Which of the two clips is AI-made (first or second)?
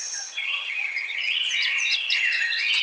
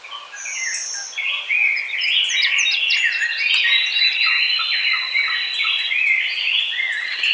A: first